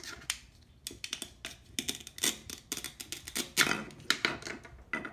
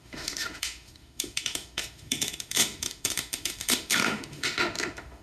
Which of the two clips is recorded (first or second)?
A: first